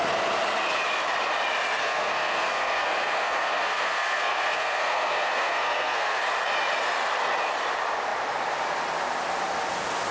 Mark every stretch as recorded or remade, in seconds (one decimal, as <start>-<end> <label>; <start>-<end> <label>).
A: 0.0-1.8 recorded; 1.8-6.2 remade; 6.2-10.1 recorded